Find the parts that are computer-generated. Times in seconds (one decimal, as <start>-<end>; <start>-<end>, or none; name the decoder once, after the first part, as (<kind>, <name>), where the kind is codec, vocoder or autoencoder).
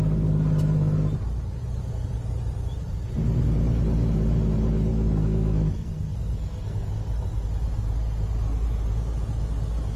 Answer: 4.9-6.9 (codec, SNAC)